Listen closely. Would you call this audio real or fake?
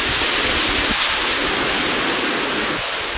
real